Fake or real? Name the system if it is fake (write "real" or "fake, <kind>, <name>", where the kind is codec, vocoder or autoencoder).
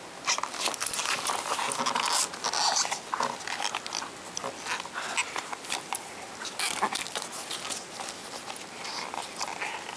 real